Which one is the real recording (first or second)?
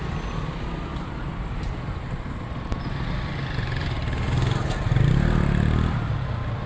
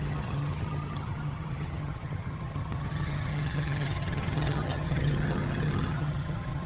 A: first